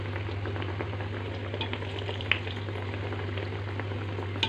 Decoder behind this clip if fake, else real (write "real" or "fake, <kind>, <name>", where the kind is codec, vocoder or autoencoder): real